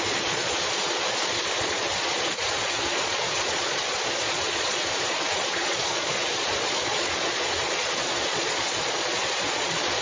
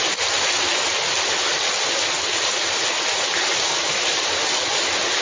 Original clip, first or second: second